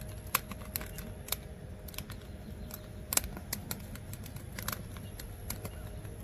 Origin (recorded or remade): recorded